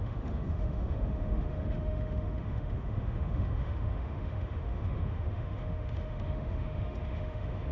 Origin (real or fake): fake